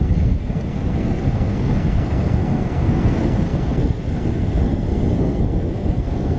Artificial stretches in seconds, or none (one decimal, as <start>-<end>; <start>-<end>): 0.0-6.4